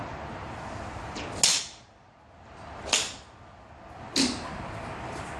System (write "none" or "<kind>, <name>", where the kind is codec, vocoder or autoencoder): none